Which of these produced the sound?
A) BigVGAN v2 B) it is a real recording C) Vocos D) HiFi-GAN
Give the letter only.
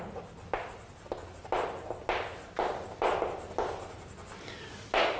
B